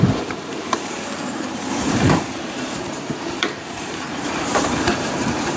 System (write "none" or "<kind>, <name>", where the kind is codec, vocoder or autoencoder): vocoder, BigVGAN v2